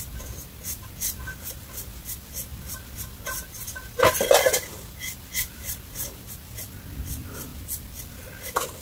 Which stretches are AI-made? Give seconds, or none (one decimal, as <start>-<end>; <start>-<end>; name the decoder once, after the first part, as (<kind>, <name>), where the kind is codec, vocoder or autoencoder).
2.5-6.3 (vocoder, BigVGAN v2); 7.5-8.1